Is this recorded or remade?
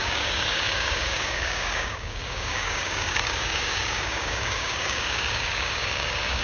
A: remade